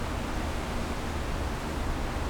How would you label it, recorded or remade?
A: recorded